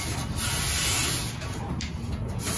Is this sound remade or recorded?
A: recorded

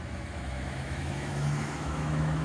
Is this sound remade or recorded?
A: remade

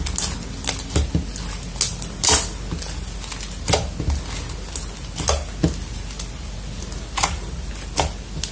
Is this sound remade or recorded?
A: recorded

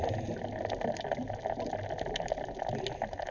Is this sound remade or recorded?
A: recorded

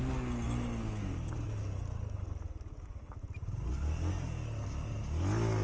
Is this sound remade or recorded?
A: recorded